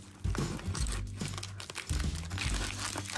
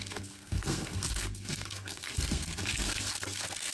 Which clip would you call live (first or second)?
first